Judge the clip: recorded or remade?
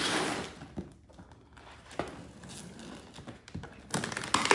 recorded